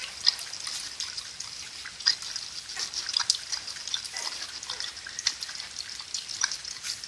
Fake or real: fake